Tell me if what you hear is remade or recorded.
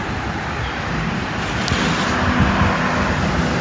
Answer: recorded